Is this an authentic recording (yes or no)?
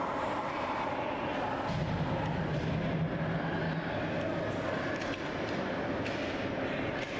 yes